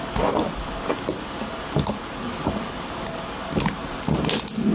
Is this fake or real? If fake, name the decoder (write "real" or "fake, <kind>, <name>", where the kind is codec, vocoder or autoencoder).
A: real